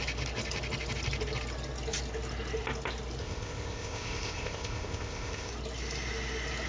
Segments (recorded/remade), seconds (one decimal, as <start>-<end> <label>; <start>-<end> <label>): 0.0-3.2 recorded; 3.2-5.5 remade; 5.5-6.7 recorded

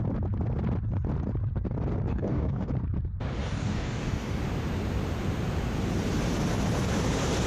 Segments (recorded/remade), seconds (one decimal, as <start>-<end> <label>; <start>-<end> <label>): 0.0-2.1 recorded; 2.1-2.7 remade; 2.7-3.4 recorded; 3.4-4.4 remade; 4.4-7.5 recorded

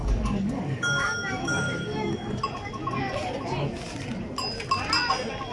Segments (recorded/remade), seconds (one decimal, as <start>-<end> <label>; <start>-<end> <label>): 0.0-2.4 remade; 2.4-5.5 recorded

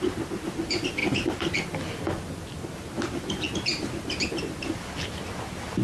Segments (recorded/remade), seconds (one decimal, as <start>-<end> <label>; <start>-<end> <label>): 0.0-5.8 recorded

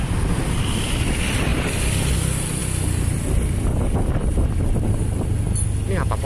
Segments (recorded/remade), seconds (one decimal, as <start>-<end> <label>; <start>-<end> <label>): 0.0-6.3 recorded

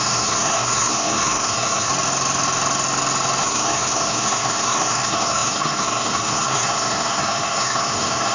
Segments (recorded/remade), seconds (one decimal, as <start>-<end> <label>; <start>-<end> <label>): 0.0-1.9 remade; 1.9-3.4 recorded; 3.4-8.3 remade

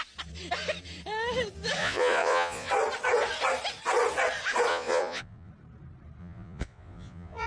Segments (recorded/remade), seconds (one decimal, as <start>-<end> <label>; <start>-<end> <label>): 0.0-1.8 recorded; 1.8-2.7 remade; 2.7-4.7 recorded; 4.7-5.5 remade; 5.5-6.2 recorded; 6.2-7.5 remade

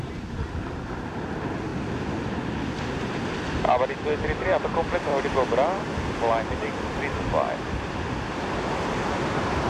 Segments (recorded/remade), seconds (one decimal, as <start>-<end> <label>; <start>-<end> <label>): 0.0-9.7 recorded